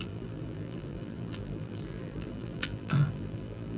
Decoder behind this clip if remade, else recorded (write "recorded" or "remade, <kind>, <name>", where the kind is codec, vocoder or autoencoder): remade, vocoder, BigVGAN v2